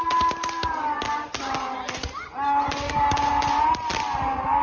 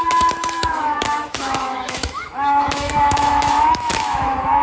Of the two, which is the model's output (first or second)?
second